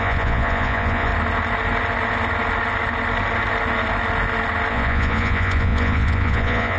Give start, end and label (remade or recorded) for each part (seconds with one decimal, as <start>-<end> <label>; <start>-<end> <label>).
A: 0.0-1.1 remade; 1.1-4.7 recorded; 4.7-6.8 remade